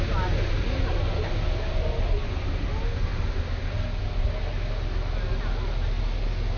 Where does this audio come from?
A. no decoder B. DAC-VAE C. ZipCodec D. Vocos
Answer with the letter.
A